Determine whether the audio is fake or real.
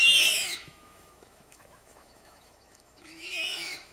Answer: fake